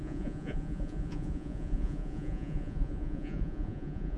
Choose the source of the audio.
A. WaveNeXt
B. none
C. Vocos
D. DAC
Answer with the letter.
C